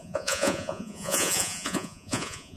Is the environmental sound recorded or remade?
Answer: remade